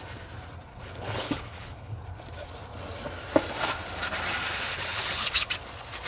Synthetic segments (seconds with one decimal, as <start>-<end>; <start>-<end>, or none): 0.7-2.0; 4.7-5.5